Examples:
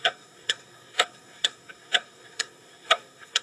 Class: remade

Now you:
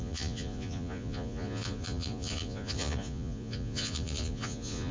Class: remade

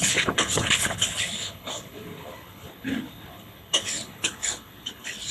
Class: remade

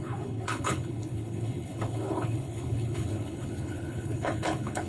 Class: remade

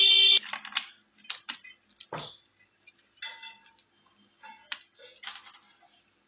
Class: recorded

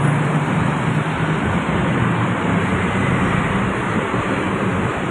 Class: recorded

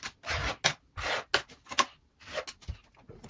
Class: recorded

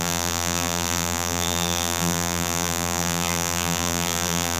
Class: remade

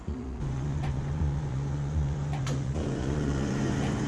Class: remade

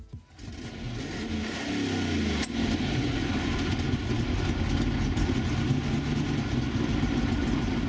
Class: recorded